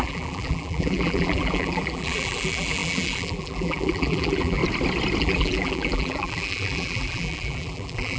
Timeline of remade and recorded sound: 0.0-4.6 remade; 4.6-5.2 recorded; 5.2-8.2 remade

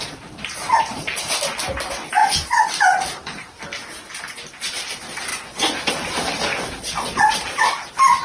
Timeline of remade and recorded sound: 0.0-2.2 recorded; 2.2-2.7 remade; 2.7-5.3 recorded; 5.3-5.9 remade; 5.9-8.2 recorded